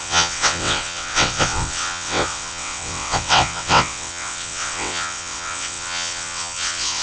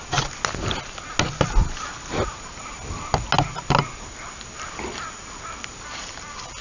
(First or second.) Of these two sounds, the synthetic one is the first